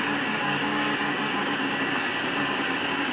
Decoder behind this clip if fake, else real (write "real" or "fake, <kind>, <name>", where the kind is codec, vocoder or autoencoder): fake, codec, DAC